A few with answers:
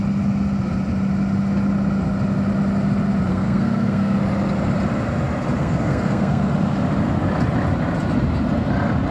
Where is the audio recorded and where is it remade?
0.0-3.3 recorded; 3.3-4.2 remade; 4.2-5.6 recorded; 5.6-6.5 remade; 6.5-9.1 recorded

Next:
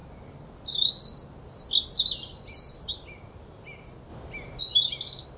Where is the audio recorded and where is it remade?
0.0-5.4 recorded